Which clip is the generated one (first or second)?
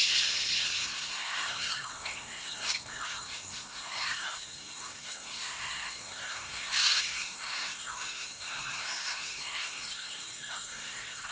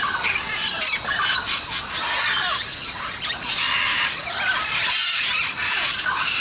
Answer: first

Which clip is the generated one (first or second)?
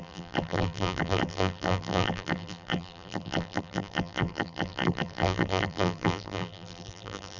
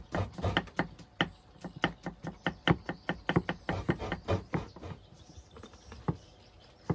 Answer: first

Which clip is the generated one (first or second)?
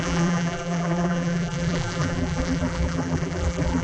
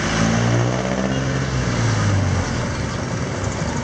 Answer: first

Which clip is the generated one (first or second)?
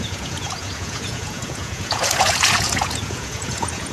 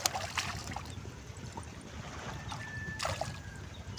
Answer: first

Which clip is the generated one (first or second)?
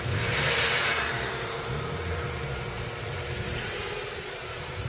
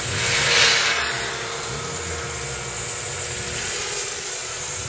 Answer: first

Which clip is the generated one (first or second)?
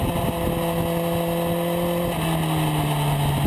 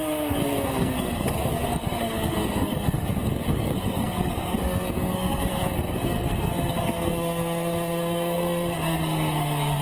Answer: second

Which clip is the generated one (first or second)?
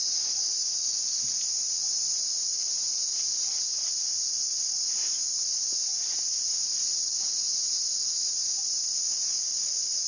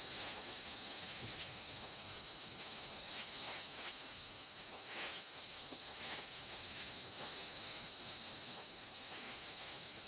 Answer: second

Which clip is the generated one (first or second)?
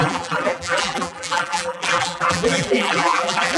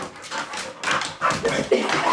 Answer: first